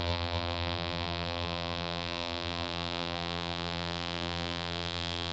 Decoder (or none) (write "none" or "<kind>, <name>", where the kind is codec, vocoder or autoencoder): vocoder, BigVGAN v2